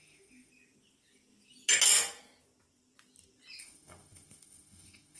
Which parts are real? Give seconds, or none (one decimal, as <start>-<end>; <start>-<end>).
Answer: 0.5-3.6